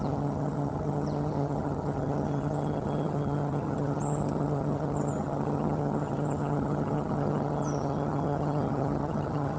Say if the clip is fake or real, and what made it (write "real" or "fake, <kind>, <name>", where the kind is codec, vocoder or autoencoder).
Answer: fake, vocoder, HiFi-GAN